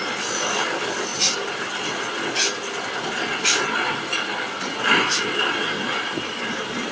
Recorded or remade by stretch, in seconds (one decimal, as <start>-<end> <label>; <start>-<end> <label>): 0.0-6.9 recorded